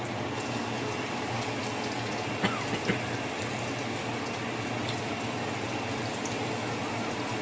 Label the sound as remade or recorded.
recorded